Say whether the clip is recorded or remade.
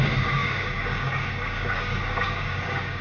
remade